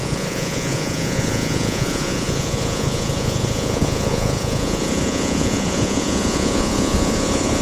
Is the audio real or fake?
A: fake